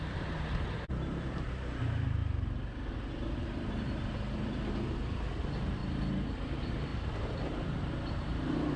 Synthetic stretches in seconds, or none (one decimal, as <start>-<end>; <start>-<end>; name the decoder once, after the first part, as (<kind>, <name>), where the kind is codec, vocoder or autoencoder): 0.0-2.2 (vocoder, BigVGAN v2); 3.4-5.8; 6.5-8.8